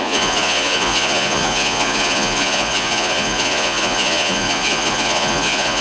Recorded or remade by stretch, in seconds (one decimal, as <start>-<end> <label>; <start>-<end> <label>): 0.0-5.8 remade